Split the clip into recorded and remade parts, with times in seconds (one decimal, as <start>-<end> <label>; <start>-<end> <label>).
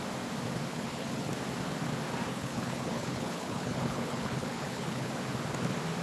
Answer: 0.0-0.7 recorded; 0.7-1.3 remade; 1.3-2.3 recorded; 2.3-5.1 remade; 5.1-6.0 recorded